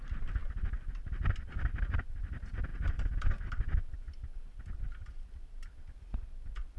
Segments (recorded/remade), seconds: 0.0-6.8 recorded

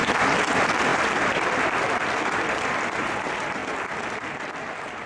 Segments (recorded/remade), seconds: 0.0-0.5 recorded; 0.5-3.6 remade; 3.6-5.1 recorded

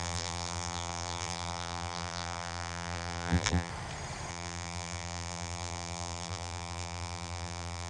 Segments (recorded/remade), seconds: 0.0-3.7 remade; 3.7-4.3 recorded; 4.3-7.9 remade

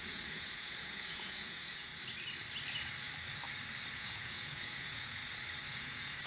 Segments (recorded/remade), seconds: 0.0-1.9 remade; 1.9-3.9 recorded; 3.9-5.2 remade; 5.2-5.7 recorded; 5.7-6.3 remade

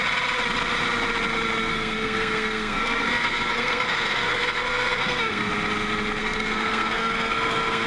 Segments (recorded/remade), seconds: 0.0-1.7 recorded; 1.7-5.5 remade; 5.5-6.2 recorded; 6.2-7.9 remade